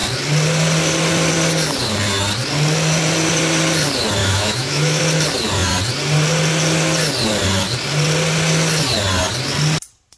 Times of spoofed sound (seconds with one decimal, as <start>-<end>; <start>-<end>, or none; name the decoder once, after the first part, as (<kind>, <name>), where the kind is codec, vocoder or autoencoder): 4.2-5.0 (autoencoder, DAC-VAE)